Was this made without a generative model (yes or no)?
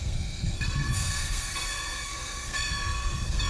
no